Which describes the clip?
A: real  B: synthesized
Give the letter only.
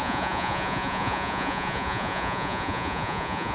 B